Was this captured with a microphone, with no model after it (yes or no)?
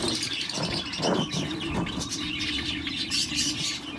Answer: yes